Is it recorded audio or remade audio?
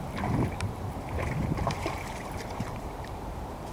remade